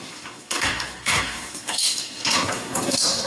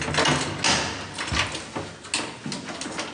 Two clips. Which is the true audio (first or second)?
second